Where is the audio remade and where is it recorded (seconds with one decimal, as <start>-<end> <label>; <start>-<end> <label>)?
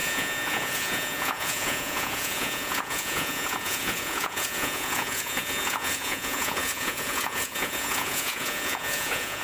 0.0-9.4 remade